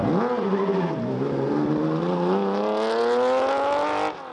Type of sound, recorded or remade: recorded